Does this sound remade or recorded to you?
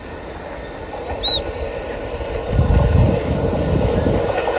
recorded